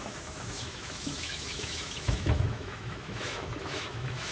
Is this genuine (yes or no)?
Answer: no